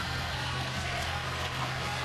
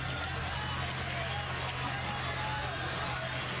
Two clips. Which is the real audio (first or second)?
second